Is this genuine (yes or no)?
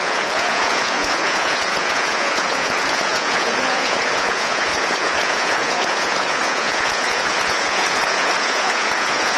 no